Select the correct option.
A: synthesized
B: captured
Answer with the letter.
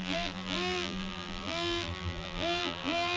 A